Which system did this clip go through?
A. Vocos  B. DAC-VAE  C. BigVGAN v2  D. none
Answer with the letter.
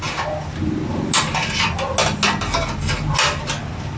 D